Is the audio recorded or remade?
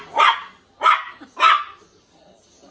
recorded